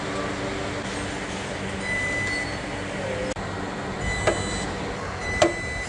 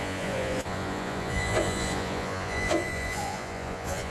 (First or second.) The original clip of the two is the first